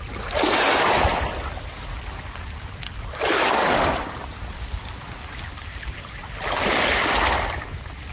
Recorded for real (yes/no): yes